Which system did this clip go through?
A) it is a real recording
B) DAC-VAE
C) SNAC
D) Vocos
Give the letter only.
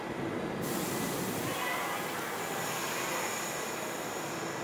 A